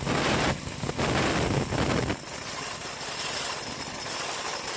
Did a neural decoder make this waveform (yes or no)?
no